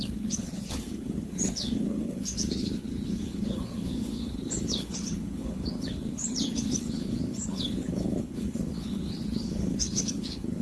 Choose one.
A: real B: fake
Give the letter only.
B